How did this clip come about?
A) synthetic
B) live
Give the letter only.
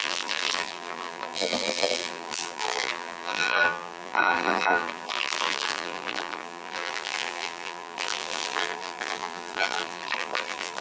A